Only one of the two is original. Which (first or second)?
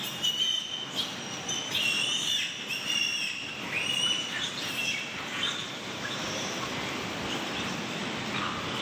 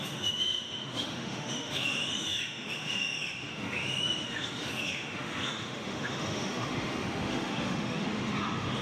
first